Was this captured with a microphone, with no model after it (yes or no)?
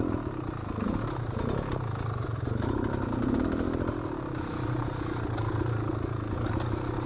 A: yes